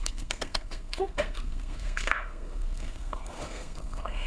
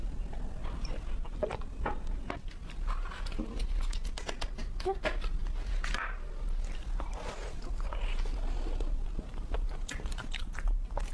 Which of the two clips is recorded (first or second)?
second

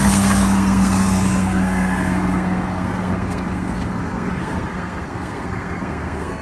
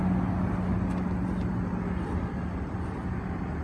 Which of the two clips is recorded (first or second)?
second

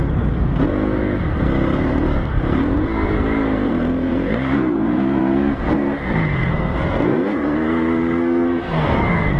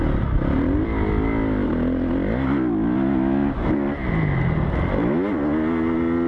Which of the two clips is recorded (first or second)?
second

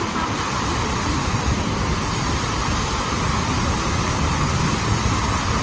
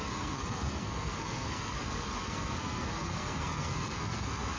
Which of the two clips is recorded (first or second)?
first